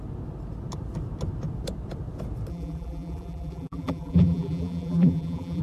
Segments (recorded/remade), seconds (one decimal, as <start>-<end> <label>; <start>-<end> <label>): 0.0-2.5 recorded; 2.5-5.6 remade